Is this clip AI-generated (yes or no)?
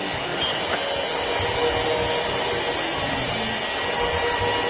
no